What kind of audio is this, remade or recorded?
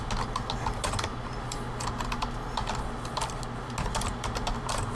recorded